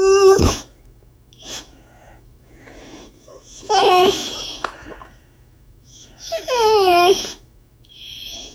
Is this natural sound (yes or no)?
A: no